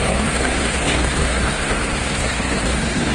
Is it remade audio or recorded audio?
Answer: remade